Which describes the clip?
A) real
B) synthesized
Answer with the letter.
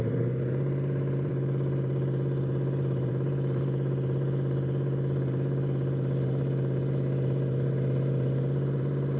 B